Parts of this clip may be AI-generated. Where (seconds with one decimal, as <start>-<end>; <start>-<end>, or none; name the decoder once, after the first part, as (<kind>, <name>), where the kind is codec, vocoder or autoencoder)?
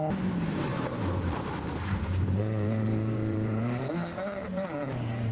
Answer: 0.7-3.9 (vocoder, BigVGAN v2)